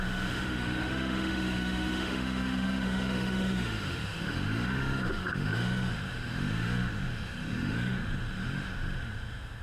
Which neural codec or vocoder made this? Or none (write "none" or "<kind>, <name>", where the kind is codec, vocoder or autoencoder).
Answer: autoencoder, DAC-VAE